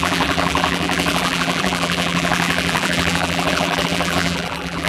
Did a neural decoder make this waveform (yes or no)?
yes